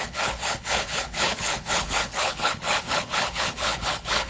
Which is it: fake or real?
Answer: fake